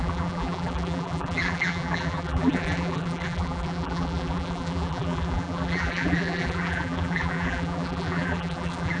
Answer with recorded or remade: remade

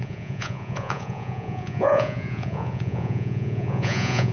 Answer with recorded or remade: remade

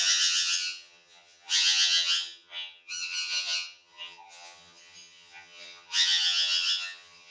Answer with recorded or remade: remade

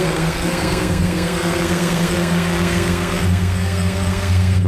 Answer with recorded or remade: remade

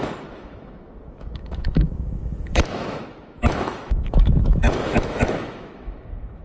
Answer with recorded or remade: remade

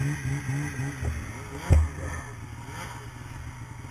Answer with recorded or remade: recorded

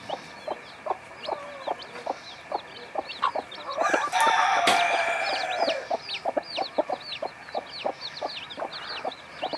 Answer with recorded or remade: recorded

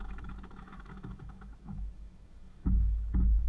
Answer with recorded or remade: remade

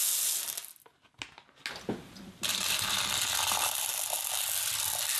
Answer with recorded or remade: recorded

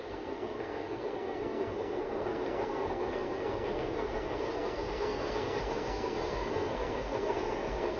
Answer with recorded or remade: remade